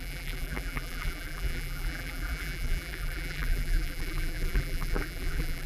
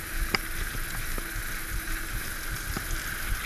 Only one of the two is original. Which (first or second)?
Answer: second